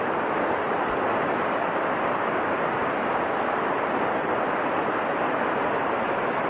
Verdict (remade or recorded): recorded